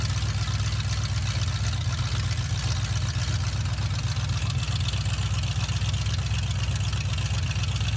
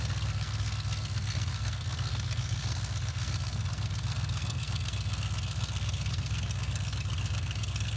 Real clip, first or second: first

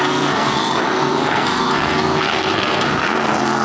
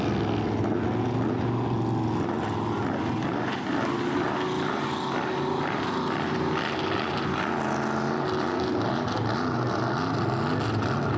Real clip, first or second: second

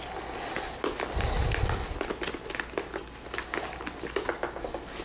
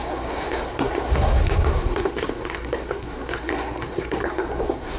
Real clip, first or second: first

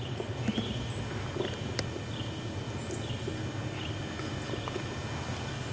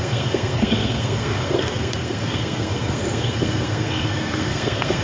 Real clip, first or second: first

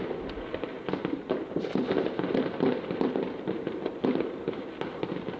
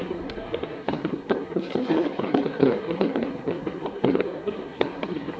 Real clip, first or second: first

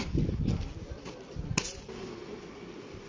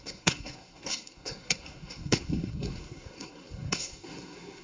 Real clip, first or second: first